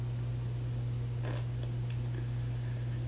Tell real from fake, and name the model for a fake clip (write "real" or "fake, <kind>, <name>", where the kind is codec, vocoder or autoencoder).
real